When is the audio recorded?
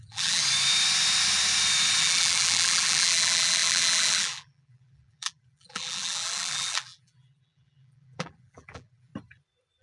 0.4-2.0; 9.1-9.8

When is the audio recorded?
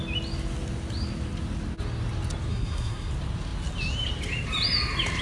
0.0-2.5; 3.1-5.2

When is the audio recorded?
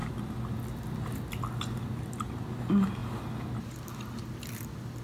0.5-5.0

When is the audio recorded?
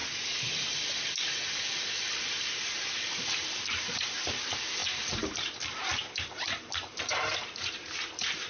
0.0-2.1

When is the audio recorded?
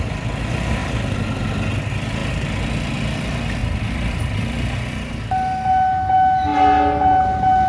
0.0-3.6; 5.1-7.7